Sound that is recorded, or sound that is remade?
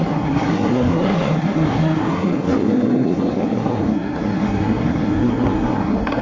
remade